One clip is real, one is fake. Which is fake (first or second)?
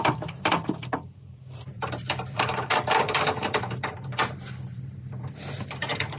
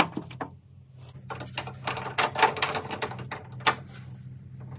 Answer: first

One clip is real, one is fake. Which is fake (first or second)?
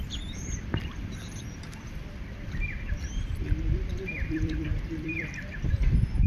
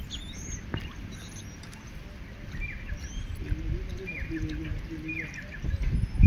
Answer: first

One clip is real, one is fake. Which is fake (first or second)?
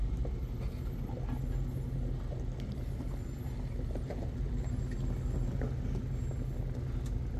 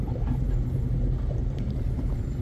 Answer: second